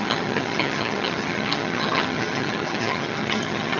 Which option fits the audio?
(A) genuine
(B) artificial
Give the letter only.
B